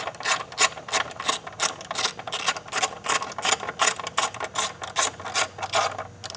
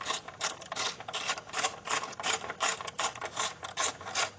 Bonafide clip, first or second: first